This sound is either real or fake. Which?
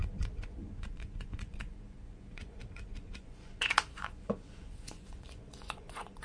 fake